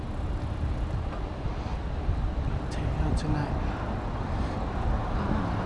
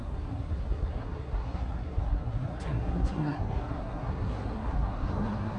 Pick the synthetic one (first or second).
second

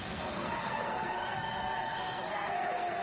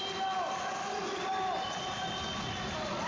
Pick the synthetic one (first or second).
first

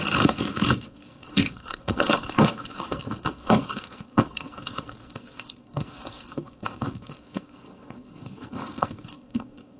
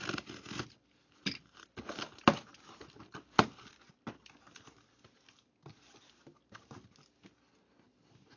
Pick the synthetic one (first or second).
first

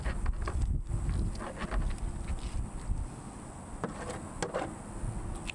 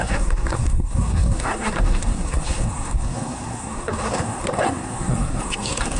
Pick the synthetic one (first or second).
second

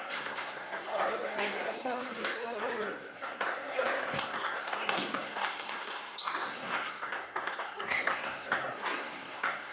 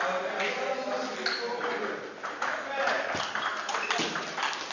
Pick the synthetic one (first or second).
first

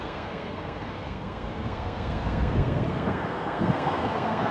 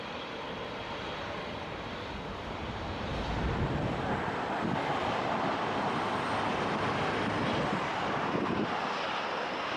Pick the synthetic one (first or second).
first